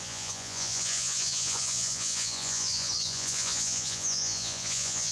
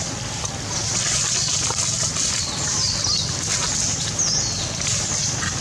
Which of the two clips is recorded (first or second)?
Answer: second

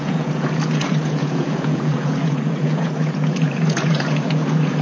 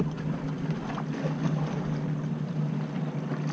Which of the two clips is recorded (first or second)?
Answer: second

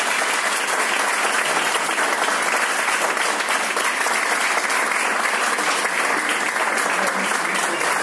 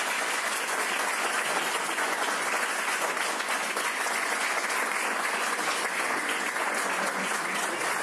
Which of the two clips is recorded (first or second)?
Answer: first